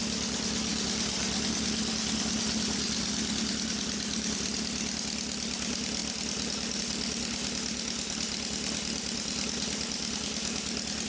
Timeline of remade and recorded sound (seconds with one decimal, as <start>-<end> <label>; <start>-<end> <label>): 0.0-11.1 recorded